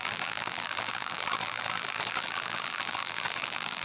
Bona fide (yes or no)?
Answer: no